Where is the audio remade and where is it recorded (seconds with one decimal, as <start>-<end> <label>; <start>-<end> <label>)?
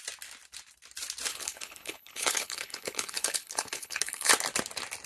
0.0-1.3 recorded; 1.3-4.3 remade; 4.3-5.1 recorded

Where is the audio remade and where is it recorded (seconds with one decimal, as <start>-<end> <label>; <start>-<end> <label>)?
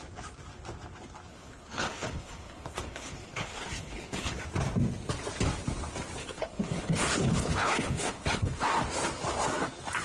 0.0-1.3 recorded; 1.3-4.4 remade; 4.4-6.2 recorded; 6.2-8.7 remade; 8.7-10.0 recorded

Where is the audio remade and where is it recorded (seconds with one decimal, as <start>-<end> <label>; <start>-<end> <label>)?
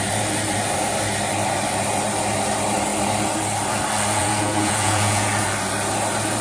0.0-4.2 recorded; 4.2-5.3 remade; 5.3-6.4 recorded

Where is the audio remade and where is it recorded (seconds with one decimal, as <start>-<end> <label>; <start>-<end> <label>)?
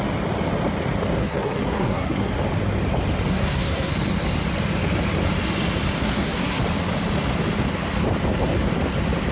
0.0-1.2 recorded; 1.2-2.3 remade; 2.3-3.3 recorded; 3.3-3.9 remade; 3.9-6.0 recorded; 6.0-6.6 remade; 6.6-9.3 recorded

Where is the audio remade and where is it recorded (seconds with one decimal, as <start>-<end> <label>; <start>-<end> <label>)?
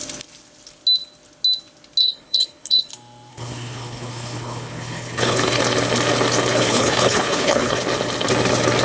0.0-2.0 recorded; 2.0-2.9 remade; 2.9-3.3 recorded; 3.3-5.6 remade; 5.6-6.5 recorded; 6.5-7.8 remade; 7.8-8.8 recorded